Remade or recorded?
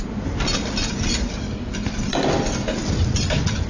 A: recorded